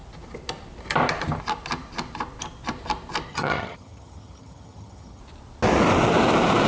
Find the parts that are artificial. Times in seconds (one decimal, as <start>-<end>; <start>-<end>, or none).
3.3-5.2